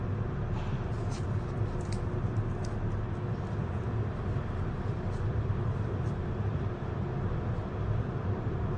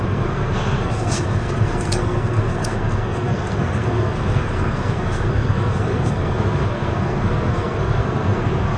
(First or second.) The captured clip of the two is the first